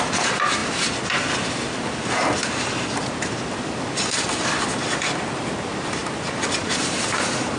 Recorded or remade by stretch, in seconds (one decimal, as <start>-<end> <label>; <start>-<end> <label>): 0.0-7.6 recorded